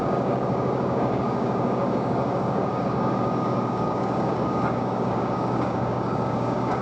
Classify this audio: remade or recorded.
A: remade